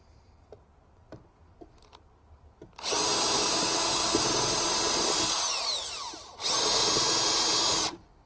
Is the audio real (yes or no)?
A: yes